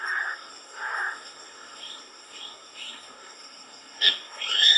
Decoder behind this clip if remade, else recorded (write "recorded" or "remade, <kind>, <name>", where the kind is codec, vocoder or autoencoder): remade, codec, SNAC